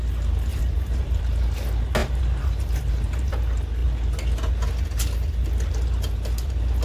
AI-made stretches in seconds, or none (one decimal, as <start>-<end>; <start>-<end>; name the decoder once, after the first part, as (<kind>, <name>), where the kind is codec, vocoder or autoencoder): 0.5-1.2 (vocoder, BigVGAN v2); 2.0-3.3